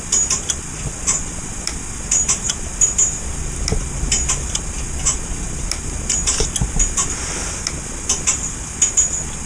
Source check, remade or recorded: recorded